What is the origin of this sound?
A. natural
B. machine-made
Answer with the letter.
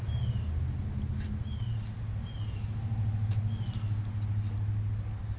A